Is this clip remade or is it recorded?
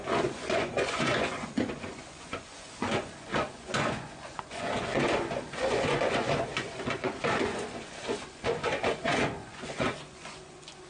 remade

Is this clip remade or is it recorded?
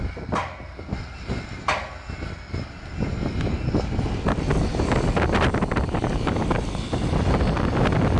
recorded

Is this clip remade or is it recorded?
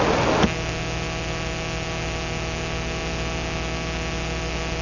recorded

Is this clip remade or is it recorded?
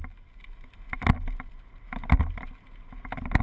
recorded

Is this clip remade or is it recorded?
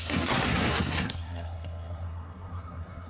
remade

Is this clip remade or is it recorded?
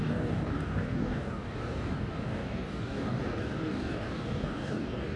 remade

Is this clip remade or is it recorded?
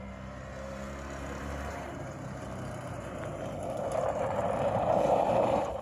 remade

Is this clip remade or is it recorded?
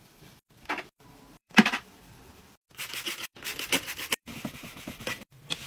remade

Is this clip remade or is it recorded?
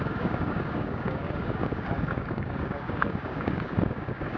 remade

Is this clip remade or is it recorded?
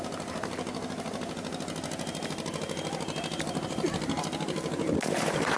recorded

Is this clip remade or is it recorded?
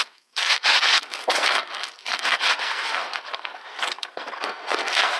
remade